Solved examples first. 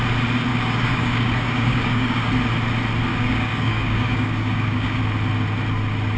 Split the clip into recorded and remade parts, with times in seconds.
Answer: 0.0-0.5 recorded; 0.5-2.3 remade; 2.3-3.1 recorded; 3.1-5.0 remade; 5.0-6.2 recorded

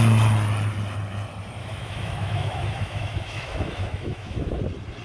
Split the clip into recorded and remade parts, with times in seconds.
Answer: 0.0-1.6 recorded; 1.6-4.6 remade; 4.6-5.0 recorded

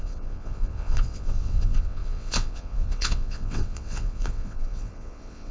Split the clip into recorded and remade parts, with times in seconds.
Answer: 0.0-5.5 remade

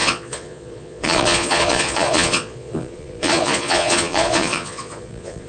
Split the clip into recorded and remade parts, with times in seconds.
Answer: 0.0-5.5 remade

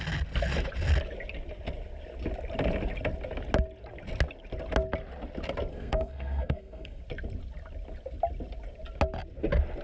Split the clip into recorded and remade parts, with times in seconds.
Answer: 0.0-5.7 recorded; 5.7-7.0 remade; 7.0-9.8 recorded